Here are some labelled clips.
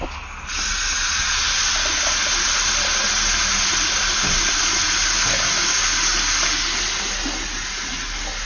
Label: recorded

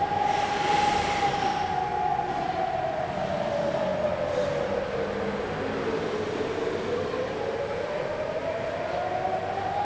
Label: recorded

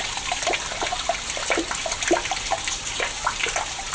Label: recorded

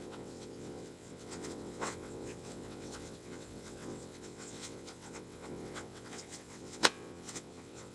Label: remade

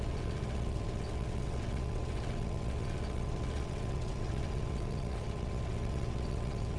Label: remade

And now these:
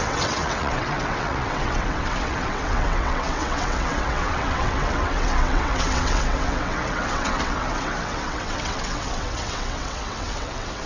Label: remade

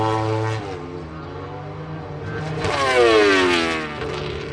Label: recorded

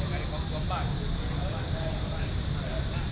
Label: recorded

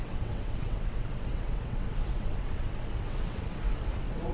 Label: remade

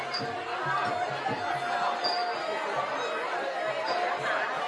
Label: recorded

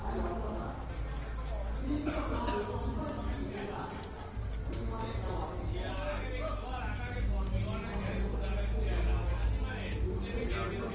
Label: recorded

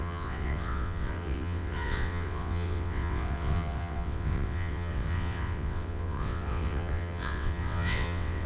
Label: remade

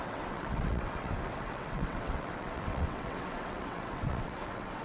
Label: remade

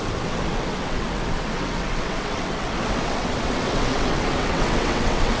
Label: remade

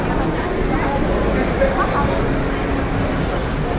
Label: recorded